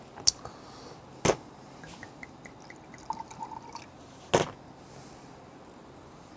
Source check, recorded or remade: recorded